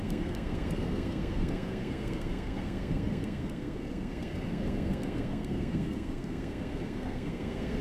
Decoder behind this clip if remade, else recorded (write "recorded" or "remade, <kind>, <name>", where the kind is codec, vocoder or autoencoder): remade, codec, SNAC